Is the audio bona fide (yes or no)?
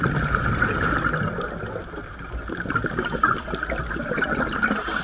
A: yes